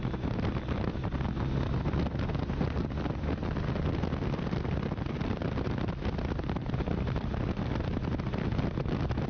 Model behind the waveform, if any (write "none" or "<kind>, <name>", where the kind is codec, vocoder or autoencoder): none